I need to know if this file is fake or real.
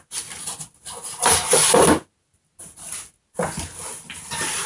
real